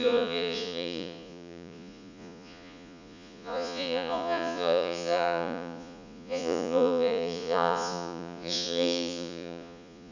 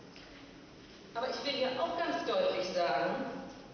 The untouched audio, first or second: second